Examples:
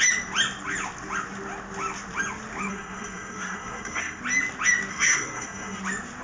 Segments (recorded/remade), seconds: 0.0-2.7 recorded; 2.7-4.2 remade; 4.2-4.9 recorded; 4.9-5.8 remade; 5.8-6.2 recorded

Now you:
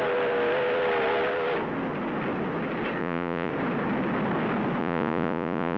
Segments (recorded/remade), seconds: 0.0-3.0 recorded; 3.0-3.5 remade; 3.5-4.8 recorded; 4.8-5.8 remade

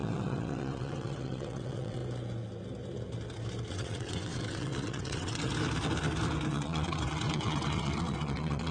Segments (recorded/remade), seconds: 0.0-2.0 remade; 2.0-3.7 recorded; 3.7-5.5 remade; 5.5-6.5 recorded; 6.5-8.7 remade

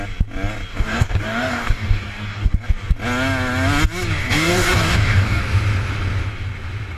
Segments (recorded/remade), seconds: 0.0-0.7 recorded; 0.7-2.5 remade; 2.5-4.2 recorded; 4.2-5.4 remade; 5.4-7.0 recorded

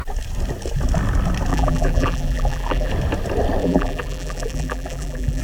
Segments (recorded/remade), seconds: 0.0-1.5 recorded; 1.5-2.9 remade; 2.9-3.6 recorded; 3.6-5.4 remade

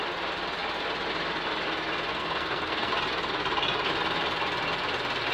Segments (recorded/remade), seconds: 0.0-2.1 recorded; 2.1-2.9 remade; 2.9-5.3 recorded

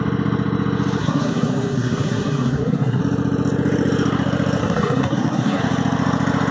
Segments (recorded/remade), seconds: 0.0-1.0 recorded; 1.0-3.0 remade; 3.0-4.6 recorded; 4.6-5.6 remade; 5.6-6.5 recorded